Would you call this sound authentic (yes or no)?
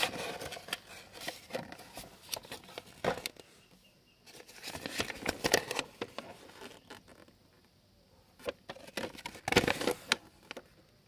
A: yes